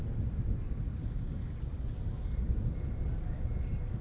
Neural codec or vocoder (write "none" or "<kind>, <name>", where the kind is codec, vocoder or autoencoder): none